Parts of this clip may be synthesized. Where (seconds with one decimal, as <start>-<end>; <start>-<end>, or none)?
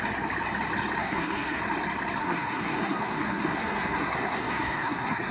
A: 1.0-1.6; 2.2-5.3